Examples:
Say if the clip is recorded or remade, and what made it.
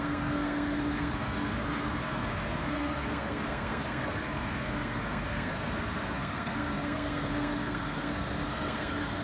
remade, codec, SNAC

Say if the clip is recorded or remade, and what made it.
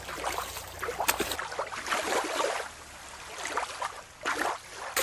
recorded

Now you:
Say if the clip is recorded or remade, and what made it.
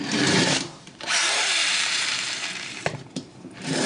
remade, vocoder, BigVGAN v2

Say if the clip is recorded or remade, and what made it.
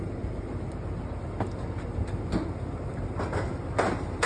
recorded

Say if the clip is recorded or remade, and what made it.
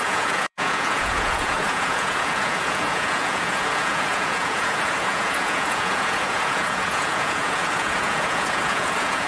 remade, vocoder, Vocos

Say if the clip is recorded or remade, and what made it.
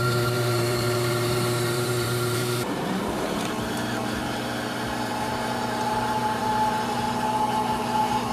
remade, vocoder, BigVGAN v2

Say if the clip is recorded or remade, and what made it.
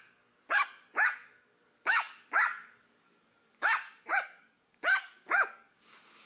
remade, codec, DAC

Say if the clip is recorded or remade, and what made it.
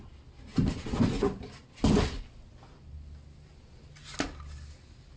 recorded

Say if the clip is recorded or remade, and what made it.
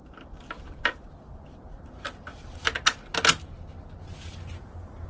recorded